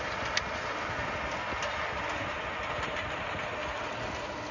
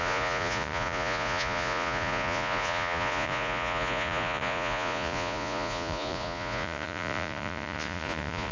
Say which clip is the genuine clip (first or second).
first